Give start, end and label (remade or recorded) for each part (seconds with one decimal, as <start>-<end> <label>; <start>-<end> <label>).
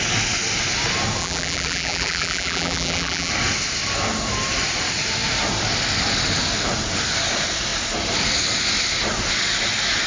0.0-1.2 recorded; 1.2-3.3 remade; 3.3-10.1 recorded